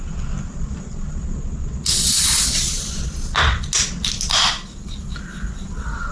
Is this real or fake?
real